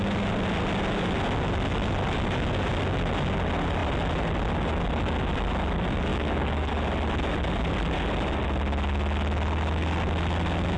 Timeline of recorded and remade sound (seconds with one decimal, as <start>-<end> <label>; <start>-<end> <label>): 0.0-6.1 recorded; 6.1-6.7 remade; 6.7-10.8 recorded